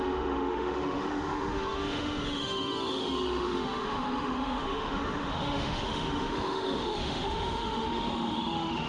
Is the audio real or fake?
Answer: fake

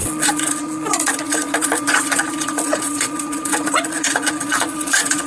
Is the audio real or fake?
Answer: fake